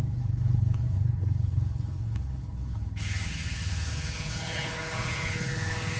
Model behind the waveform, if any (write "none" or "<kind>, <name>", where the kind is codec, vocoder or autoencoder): codec, HILCodec